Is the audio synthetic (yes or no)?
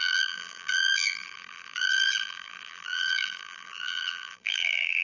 yes